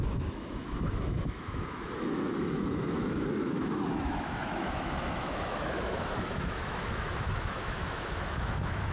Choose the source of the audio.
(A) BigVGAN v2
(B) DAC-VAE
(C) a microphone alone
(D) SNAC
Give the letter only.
B